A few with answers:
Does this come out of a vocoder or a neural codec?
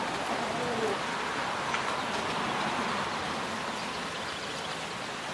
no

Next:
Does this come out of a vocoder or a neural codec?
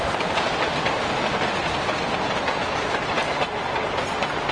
no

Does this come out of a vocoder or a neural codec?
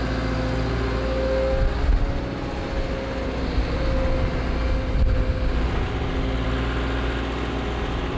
no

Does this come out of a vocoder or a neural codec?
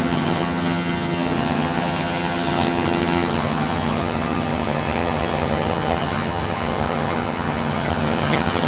yes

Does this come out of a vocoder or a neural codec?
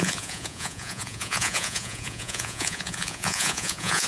yes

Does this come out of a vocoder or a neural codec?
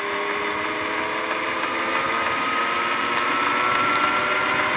no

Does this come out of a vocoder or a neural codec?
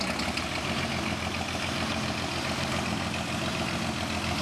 no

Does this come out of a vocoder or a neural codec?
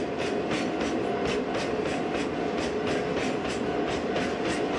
no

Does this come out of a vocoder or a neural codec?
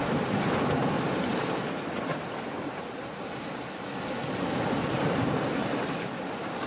no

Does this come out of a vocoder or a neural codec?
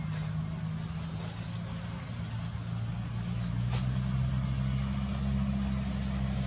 no